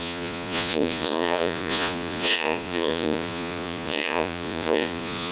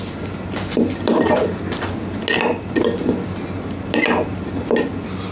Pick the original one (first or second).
second